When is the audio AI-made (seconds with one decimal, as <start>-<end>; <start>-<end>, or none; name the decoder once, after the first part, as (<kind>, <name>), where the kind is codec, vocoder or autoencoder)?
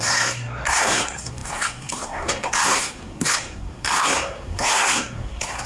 0.0-5.7 (codec, SNAC)